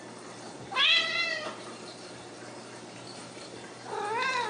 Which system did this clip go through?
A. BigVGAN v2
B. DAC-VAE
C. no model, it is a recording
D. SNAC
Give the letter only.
C